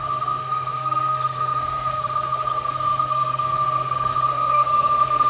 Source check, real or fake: fake